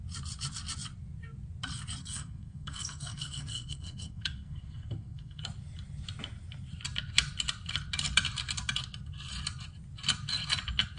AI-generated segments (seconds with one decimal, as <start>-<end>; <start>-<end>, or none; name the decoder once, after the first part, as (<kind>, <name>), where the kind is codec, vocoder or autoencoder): 2.0-5.4 (codec, SNAC)

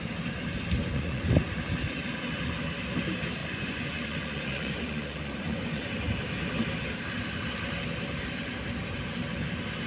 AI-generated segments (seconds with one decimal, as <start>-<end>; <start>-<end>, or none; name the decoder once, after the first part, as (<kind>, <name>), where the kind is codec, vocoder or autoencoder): 0.8-1.3 (vocoder, Vocos); 3.4-5.9

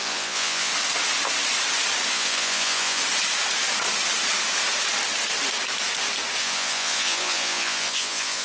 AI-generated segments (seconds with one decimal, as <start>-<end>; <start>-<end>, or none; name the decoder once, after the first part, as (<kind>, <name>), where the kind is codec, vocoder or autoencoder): 0.0-0.7 (vocoder, Vocos); 2.1-3.0; 6.4-8.4

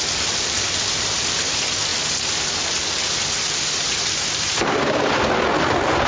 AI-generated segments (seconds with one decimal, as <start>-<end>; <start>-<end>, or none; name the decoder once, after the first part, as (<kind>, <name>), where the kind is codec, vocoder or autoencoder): 0.0-1.9 (vocoder, BigVGAN v2); 3.9-6.1

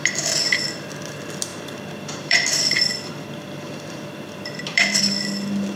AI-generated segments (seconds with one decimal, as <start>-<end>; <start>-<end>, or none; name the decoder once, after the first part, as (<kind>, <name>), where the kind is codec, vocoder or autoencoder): 1.5-5.0 (vocoder, BigVGAN v2)

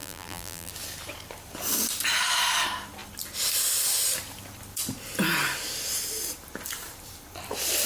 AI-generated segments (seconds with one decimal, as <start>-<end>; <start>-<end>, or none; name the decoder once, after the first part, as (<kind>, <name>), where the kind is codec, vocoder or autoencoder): 0.0-0.7 (vocoder, BigVGAN v2)